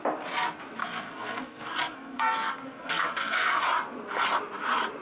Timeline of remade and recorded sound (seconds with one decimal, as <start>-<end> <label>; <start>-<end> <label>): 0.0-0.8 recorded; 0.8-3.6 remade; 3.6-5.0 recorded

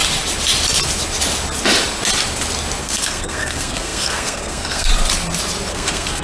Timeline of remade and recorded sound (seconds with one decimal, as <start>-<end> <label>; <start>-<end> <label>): 0.0-2.8 recorded; 2.8-4.9 remade; 4.9-5.7 recorded; 5.7-6.2 remade

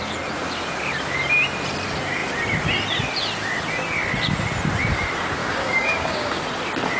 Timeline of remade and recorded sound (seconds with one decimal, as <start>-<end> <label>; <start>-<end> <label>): 0.0-5.4 recorded; 5.4-6.4 remade; 6.4-7.0 recorded

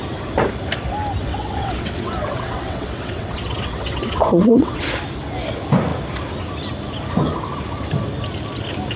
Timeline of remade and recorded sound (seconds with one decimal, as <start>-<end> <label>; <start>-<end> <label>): 0.0-1.2 recorded; 1.2-4.8 remade; 4.8-9.0 recorded

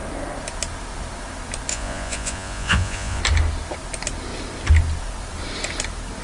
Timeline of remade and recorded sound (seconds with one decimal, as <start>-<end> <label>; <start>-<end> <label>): 0.0-1.7 recorded; 1.7-3.2 remade; 3.2-6.2 recorded

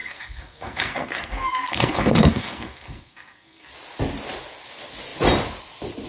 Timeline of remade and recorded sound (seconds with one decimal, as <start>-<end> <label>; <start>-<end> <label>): 0.0-3.7 remade; 3.7-6.1 recorded

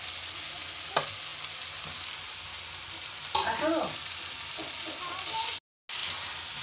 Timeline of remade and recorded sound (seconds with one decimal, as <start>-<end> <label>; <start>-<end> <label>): 0.0-6.6 recorded